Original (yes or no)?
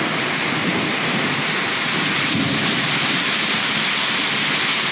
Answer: yes